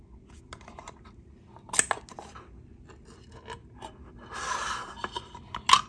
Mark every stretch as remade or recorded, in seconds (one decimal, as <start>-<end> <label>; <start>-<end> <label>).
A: 0.0-5.9 recorded